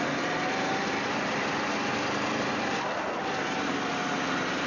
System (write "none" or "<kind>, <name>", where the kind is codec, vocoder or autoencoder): none